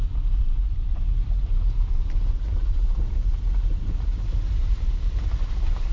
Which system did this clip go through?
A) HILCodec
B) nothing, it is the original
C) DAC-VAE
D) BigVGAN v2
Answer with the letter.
D